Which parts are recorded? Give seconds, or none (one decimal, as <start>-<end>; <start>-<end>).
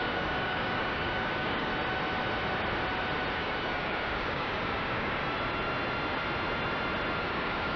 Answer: 1.7-3.3; 5.2-7.2